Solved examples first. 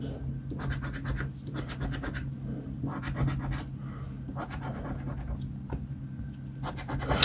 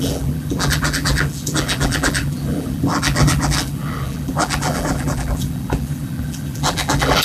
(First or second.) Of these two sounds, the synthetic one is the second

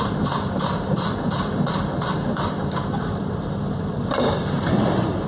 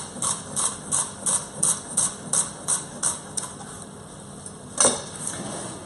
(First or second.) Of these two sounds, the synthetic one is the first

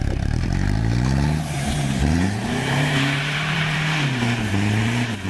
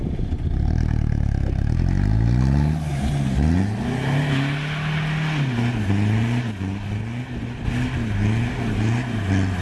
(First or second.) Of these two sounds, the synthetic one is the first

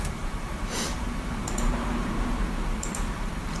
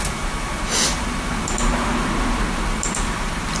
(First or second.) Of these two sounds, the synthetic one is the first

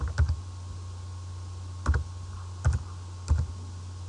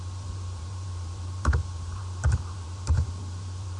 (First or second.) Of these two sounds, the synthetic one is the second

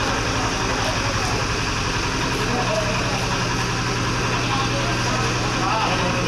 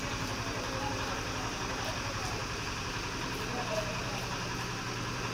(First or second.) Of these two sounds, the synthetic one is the second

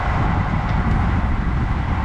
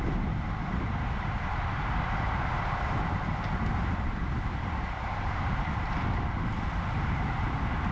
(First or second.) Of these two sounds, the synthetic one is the second